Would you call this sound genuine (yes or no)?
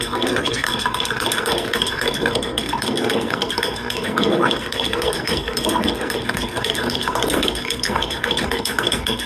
no